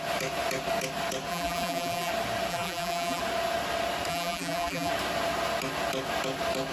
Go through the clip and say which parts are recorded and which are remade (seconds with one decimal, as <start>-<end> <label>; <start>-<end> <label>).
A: 0.0-1.3 recorded; 1.3-2.1 remade; 2.1-2.5 recorded; 2.5-3.2 remade; 3.2-4.1 recorded; 4.1-4.9 remade; 4.9-6.7 recorded